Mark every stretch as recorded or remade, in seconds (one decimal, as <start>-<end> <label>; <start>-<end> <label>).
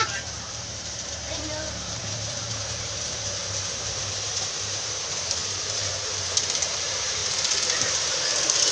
0.0-7.2 remade; 7.2-8.7 recorded